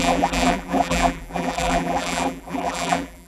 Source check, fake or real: fake